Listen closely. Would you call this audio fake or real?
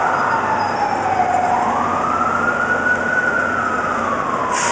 real